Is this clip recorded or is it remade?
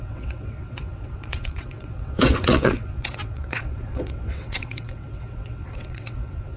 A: remade